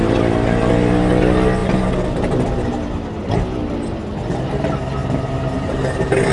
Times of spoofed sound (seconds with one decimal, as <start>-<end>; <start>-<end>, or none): 5.0-6.3